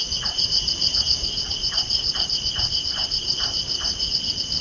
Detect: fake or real real